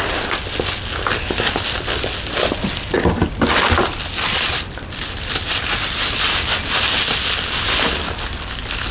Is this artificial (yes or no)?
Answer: no